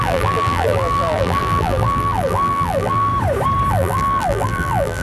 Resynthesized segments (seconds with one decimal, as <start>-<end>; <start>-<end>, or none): 0.0-3.1; 3.7-5.0